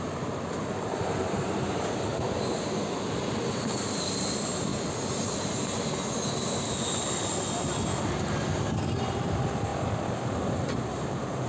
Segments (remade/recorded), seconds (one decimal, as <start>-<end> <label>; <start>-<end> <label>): 0.0-2.1 remade; 2.1-3.5 recorded; 3.5-4.7 remade; 4.7-8.7 recorded; 8.7-11.5 remade